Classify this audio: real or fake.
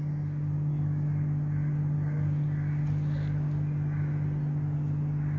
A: real